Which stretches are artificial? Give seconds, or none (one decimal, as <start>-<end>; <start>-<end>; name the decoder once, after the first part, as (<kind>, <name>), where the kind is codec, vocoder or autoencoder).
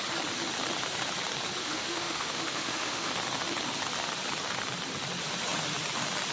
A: 1.6-3.1 (autoencoder, DAC-VAE)